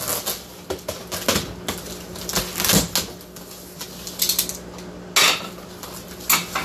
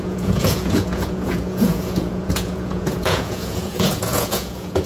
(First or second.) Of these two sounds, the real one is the first